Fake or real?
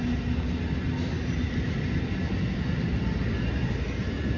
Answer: real